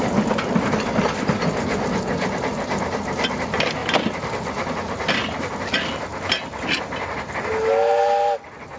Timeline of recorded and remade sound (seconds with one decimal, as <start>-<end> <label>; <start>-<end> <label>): 0.0-8.8 recorded